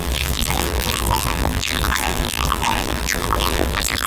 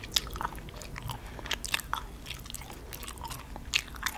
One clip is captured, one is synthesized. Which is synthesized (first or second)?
first